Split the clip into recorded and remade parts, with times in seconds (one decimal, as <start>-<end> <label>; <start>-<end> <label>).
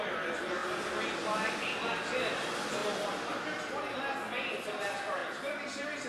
0.0-6.1 recorded